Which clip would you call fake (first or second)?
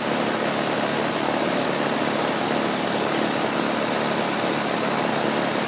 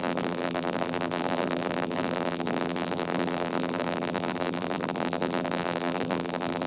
second